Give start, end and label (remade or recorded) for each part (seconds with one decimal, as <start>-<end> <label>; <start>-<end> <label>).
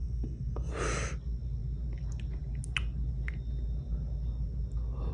0.0-0.7 remade; 0.7-5.1 recorded